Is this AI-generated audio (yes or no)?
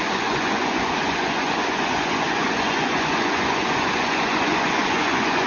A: yes